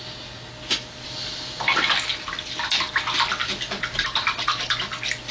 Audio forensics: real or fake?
real